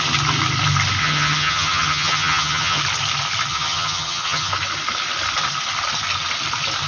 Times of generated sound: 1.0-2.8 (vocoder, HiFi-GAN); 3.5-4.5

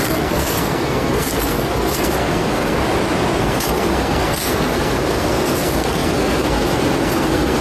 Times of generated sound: 0.0-2.8 (codec, SNAC); 3.4-7.6

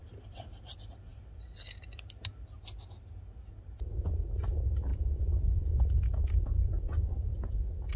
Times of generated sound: 4.9-5.8 (vocoder, Vocos); 6.6-7.5

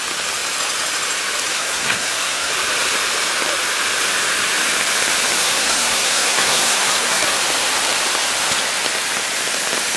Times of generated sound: 1.5-2.5 (codec, SNAC); 5.4-7.4

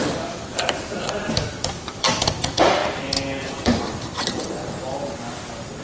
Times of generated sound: 0.0-2.8 (vocoder, BigVGAN v2); 3.5-4.6

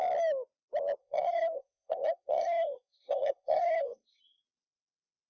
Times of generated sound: 1.0-4.2 (codec, SNAC)

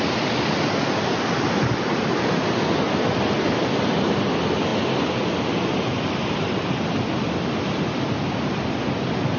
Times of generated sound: none